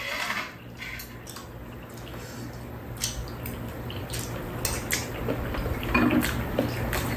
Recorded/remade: recorded